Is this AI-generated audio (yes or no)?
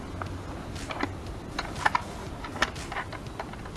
no